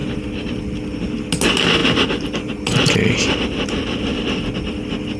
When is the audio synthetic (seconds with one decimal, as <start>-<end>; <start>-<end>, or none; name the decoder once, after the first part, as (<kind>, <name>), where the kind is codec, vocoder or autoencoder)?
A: none